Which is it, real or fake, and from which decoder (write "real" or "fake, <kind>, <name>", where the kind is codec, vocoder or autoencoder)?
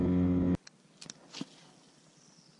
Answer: real